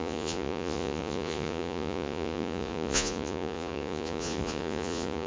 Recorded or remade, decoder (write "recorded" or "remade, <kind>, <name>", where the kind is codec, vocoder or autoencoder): remade, vocoder, Vocos